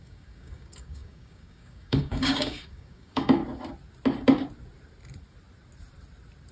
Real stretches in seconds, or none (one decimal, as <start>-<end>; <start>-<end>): 3.4-6.5